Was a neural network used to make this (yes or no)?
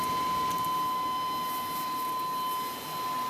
no